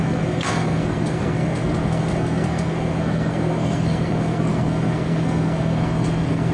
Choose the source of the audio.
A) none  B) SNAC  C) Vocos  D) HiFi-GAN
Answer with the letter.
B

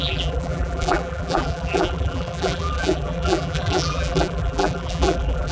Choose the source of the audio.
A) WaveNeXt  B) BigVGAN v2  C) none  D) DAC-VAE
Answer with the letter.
B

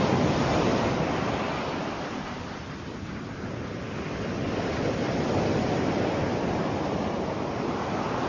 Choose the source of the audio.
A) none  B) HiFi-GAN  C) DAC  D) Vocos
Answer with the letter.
A